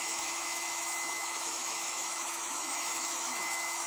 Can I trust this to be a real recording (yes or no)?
no